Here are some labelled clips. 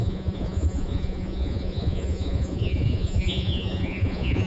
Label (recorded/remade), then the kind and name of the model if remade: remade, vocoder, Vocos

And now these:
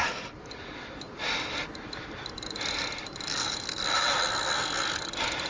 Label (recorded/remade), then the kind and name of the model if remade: recorded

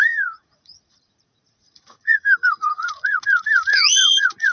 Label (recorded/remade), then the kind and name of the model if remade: remade, vocoder, Vocos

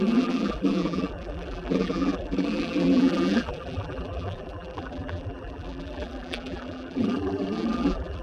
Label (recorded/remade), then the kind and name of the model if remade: remade, vocoder, BigVGAN v2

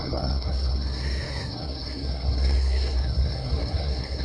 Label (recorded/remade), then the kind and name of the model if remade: remade, codec, SNAC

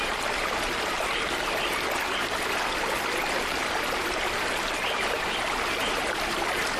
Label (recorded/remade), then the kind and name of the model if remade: recorded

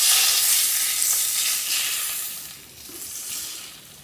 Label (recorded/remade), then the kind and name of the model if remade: recorded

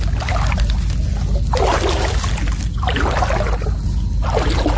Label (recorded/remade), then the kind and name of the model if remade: recorded